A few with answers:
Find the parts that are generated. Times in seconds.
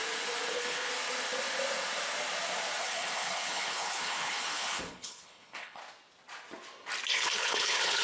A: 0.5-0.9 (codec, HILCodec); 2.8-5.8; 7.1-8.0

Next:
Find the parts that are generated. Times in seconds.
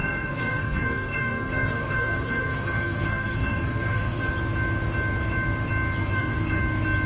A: 0.0-4.3 (codec, SNAC); 6.0-6.6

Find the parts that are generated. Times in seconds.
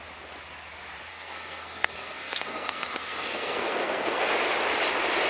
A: 1.1-4.3 (codec, SNAC)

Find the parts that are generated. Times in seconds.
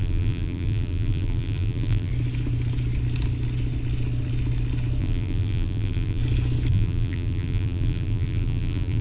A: 0.0-2.1 (vocoder, BigVGAN v2); 5.0-6.2; 6.7-9.0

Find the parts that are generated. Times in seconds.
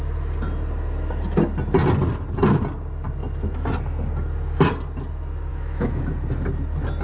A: 5.5-6.0 (autoencoder, DAC-VAE)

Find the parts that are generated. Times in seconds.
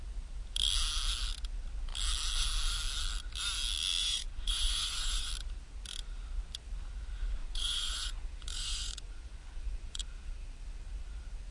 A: 4.0-5.3 (vocoder, Vocos); 7.4-10.0